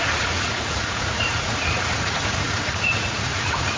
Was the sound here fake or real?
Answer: fake